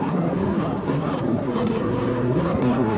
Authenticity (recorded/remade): remade